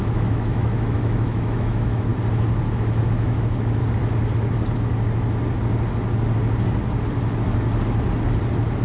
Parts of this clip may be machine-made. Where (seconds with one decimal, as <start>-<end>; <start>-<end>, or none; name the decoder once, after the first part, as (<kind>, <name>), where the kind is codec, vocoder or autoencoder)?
0.0-2.1 (autoencoder, DAC-VAE); 3.0-3.8